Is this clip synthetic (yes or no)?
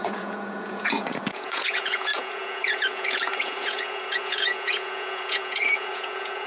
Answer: yes